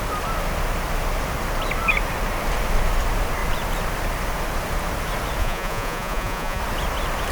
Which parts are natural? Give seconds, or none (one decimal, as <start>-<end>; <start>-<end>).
0.0-5.4; 6.6-7.3